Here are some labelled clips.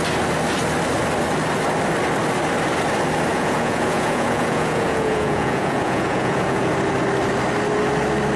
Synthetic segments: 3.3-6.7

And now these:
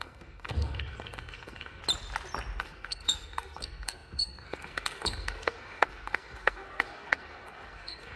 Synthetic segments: 0.0-1.8; 2.6-8.2